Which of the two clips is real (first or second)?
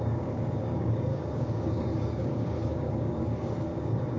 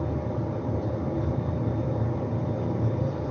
second